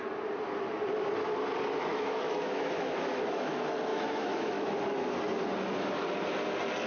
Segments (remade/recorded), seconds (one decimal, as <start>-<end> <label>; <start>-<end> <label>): 0.0-1.9 recorded; 1.9-3.5 remade; 3.5-3.9 recorded; 3.9-5.1 remade; 5.1-6.9 recorded